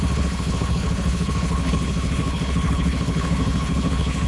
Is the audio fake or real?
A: fake